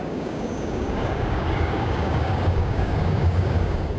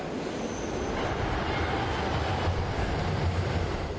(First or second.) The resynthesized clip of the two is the first